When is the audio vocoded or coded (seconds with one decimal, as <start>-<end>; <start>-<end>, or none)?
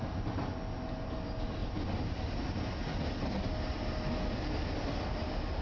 none